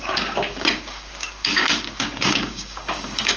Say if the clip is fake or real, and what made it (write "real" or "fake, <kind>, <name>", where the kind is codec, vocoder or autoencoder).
fake, codec, DAC